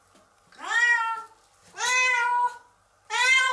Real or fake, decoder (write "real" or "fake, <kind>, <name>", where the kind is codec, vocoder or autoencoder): real